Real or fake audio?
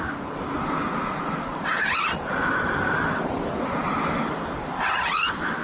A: real